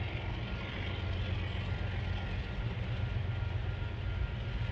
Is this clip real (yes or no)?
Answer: yes